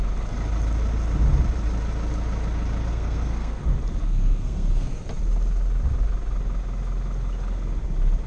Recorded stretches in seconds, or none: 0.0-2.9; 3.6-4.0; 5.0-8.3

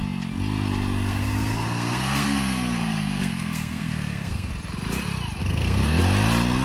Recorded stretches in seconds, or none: 0.0-1.1; 4.5-5.4; 6.0-6.6

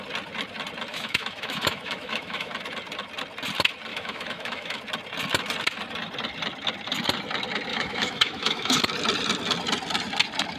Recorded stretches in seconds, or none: 0.0-0.9; 2.5-3.9; 4.8-7.7; 8.8-10.6

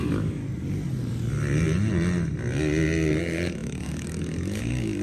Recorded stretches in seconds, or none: 0.4-3.2

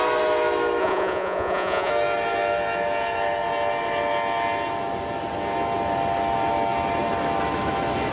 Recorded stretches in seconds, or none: 0.0-0.8; 1.9-8.1